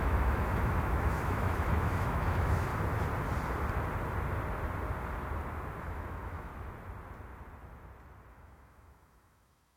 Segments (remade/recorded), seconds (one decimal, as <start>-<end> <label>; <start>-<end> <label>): 0.0-2.7 remade; 2.7-5.8 recorded; 5.8-6.5 remade; 6.5-8.3 recorded; 8.3-9.8 remade